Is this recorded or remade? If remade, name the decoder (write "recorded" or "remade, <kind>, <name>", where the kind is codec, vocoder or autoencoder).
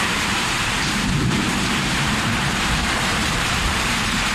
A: remade, vocoder, BigVGAN v2